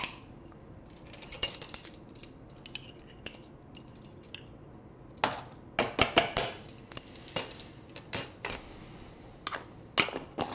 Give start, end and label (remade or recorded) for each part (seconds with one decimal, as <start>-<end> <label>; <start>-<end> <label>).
0.0-10.5 recorded